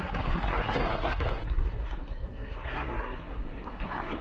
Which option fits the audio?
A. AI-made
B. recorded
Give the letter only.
A